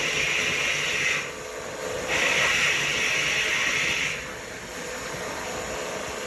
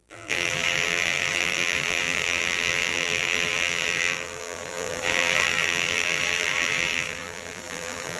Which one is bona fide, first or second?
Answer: first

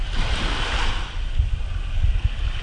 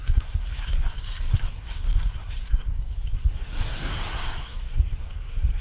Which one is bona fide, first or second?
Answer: first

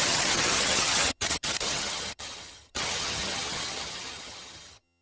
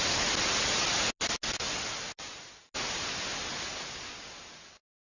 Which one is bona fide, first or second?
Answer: second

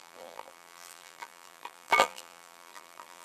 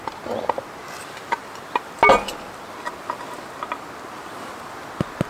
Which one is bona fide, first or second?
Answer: second